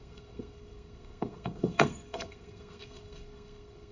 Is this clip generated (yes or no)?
yes